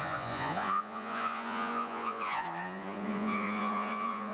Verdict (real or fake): fake